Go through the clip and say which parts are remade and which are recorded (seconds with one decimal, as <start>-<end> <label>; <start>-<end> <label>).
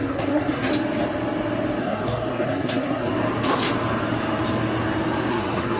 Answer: 0.0-0.7 remade; 0.7-1.8 recorded; 1.8-3.1 remade; 3.1-5.3 recorded; 5.3-5.8 remade